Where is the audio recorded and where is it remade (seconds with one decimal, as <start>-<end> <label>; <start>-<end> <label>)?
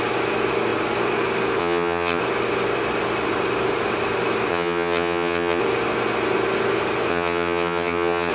0.0-1.6 recorded; 1.6-2.2 remade; 2.2-4.5 recorded; 4.5-5.6 remade; 5.6-7.1 recorded; 7.1-8.3 remade